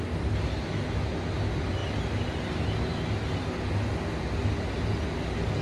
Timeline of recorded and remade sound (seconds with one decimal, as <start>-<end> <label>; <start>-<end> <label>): 0.0-5.6 recorded